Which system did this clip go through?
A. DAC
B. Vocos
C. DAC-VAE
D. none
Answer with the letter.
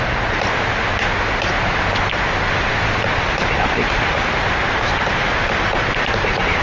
D